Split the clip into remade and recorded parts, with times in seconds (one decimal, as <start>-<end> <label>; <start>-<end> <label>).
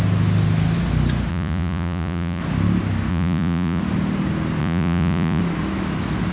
0.0-1.3 recorded; 1.3-2.4 remade; 2.4-3.1 recorded; 3.1-3.8 remade; 3.8-4.6 recorded; 4.6-5.4 remade; 5.4-6.3 recorded